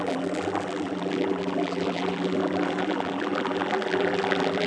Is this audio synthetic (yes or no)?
yes